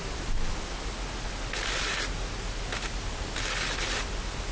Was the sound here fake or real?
real